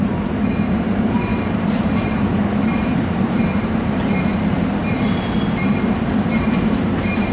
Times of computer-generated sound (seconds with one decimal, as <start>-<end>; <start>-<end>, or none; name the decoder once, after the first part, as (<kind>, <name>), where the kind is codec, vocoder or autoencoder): 0.0-7.3 (vocoder, BigVGAN v2)